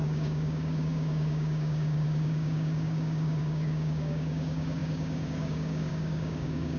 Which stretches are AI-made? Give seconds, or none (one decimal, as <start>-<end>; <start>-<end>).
0.0-6.8